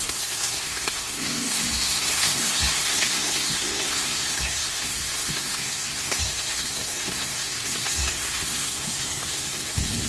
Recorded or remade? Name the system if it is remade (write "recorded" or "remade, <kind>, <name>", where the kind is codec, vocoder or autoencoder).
remade, codec, SNAC